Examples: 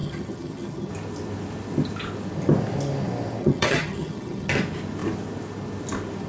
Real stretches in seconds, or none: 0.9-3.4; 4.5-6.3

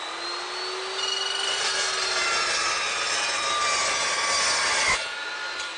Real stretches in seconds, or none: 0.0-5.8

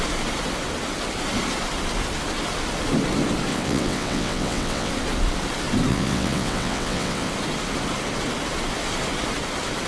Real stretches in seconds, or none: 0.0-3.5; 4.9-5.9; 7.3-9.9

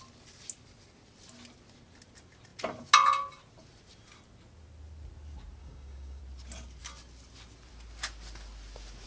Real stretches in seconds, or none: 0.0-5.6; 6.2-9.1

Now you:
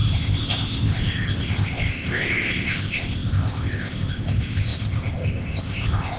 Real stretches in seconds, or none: none

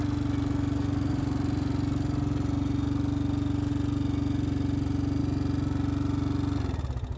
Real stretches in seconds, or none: 0.0-7.2

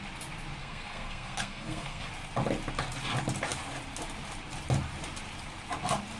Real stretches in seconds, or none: 0.0-0.6; 2.1-6.2